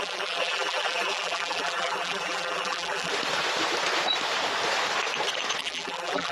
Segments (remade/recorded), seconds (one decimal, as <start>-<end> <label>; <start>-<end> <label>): 0.0-3.1 remade; 3.1-5.6 recorded; 5.6-6.3 remade